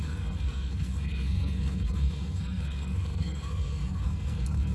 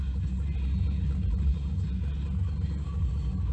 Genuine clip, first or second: second